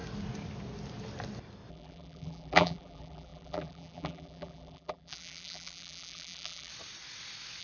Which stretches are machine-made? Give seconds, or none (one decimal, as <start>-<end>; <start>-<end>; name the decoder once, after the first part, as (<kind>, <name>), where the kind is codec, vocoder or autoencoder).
1.7-6.7 (vocoder, BigVGAN v2)